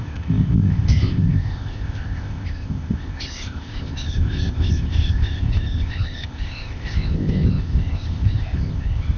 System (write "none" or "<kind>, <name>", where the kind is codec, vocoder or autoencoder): codec, ZipCodec